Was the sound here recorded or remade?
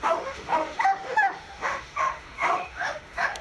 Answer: remade